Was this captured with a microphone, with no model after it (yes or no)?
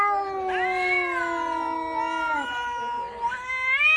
yes